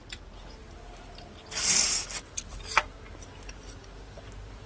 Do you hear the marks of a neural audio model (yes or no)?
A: no